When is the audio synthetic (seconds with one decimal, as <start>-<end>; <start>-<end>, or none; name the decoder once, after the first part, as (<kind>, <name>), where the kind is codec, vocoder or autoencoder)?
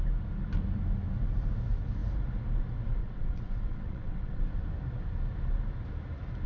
3.0-4.4 (vocoder, WaveNeXt)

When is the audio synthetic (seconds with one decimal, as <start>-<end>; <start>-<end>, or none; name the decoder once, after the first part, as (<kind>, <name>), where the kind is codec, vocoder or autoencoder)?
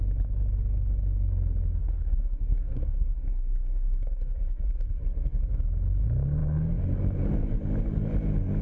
1.8-5.0 (codec, SNAC)